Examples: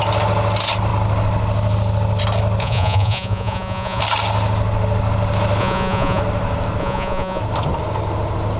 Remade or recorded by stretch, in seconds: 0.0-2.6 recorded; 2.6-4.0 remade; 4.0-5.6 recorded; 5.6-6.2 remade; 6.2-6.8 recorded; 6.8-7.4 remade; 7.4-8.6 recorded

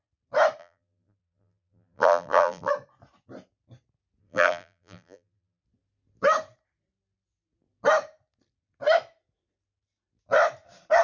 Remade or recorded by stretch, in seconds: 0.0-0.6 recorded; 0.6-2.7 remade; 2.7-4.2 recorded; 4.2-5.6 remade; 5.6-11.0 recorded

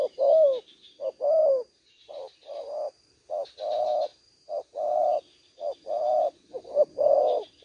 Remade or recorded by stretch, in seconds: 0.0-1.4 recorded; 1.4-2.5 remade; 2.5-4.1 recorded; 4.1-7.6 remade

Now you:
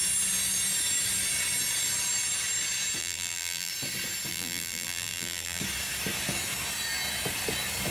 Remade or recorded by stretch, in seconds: 0.0-3.0 recorded; 3.0-3.7 remade; 3.7-4.3 recorded; 4.3-5.6 remade; 5.6-7.9 recorded

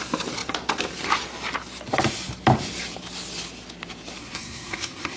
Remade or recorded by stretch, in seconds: 0.0-4.2 recorded; 4.2-5.2 remade

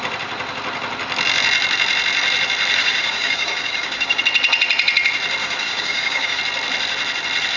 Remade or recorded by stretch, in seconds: 0.0-2.8 recorded; 2.8-4.2 remade; 4.2-5.4 recorded; 5.4-6.4 remade; 6.4-7.6 recorded

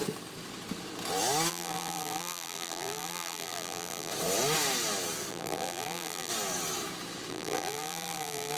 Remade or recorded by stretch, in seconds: 0.0-1.5 recorded; 1.5-4.1 remade; 4.1-5.3 recorded; 5.3-6.3 remade; 6.3-7.3 recorded; 7.3-8.6 remade

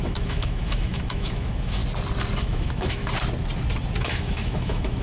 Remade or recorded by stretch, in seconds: 0.0-1.8 remade; 1.8-2.4 recorded; 2.4-3.0 remade; 3.0-4.0 recorded; 4.0-5.0 remade